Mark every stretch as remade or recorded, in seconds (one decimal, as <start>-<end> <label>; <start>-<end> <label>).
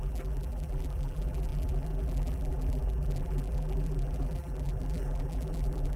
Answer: 0.0-6.0 remade